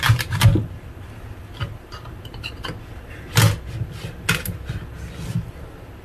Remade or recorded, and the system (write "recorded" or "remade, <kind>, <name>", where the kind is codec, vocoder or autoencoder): recorded